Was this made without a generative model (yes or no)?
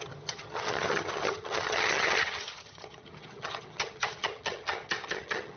no